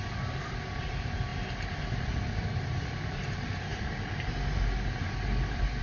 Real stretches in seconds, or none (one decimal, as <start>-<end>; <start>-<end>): 0.0-5.8